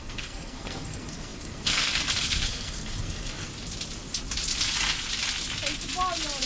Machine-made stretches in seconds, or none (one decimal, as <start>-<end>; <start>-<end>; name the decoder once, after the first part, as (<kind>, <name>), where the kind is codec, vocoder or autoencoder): 0.0-3.5 (codec, SNAC)